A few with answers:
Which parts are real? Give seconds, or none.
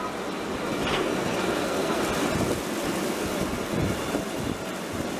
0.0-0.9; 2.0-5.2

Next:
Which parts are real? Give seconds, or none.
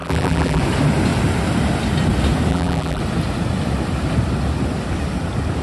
0.6-2.5; 3.0-5.6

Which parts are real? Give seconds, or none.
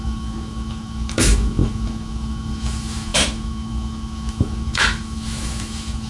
none